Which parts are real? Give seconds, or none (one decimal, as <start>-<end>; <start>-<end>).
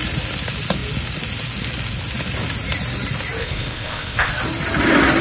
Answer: 0.0-3.4; 4.3-5.2